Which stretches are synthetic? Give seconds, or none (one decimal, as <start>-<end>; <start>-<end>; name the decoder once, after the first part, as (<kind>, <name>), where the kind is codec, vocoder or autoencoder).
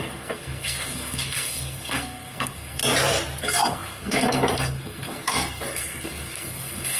0.0-2.8 (codec, SNAC); 3.4-7.0